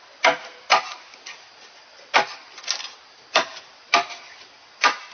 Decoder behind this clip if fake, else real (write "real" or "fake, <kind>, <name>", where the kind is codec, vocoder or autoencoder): real